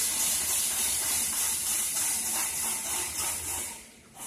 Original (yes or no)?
yes